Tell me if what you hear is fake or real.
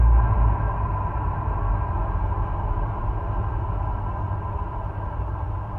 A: fake